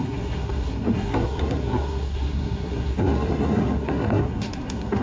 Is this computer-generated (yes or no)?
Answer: yes